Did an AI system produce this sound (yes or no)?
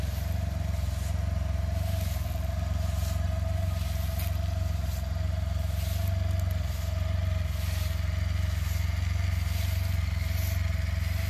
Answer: no